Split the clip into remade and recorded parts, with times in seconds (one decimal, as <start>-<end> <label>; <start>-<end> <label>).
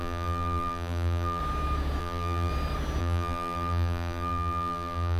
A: 0.0-1.4 remade; 1.4-2.0 recorded; 2.0-2.5 remade; 2.5-3.0 recorded; 3.0-5.2 remade